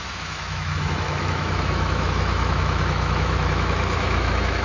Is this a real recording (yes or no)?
no